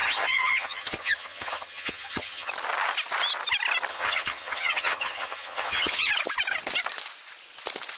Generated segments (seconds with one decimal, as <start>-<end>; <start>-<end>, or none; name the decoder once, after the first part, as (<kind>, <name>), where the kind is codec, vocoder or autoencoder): 0.0-2.5 (vocoder, HiFi-GAN); 3.9-6.1